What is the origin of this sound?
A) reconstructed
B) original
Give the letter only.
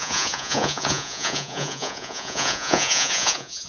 A